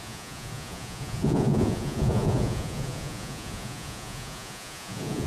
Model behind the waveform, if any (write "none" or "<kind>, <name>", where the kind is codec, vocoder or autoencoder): vocoder, Vocos